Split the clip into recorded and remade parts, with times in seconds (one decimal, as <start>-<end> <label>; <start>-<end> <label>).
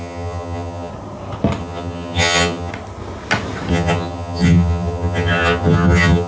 0.0-0.9 remade; 0.9-1.6 recorded; 1.6-2.7 remade; 2.7-3.7 recorded; 3.7-6.3 remade